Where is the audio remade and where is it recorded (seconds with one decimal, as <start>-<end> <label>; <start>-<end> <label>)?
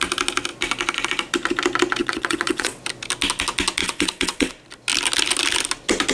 0.0-2.0 recorded; 2.0-2.8 remade; 2.8-3.8 recorded; 3.8-4.5 remade; 4.5-6.1 recorded